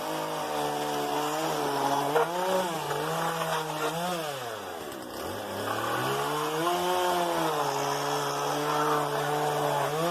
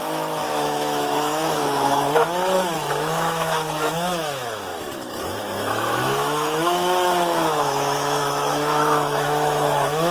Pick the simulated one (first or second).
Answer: second